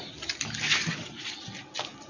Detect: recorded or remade recorded